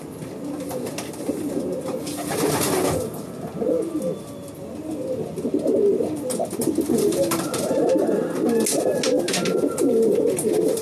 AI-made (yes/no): no